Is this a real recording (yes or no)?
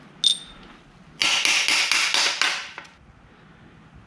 yes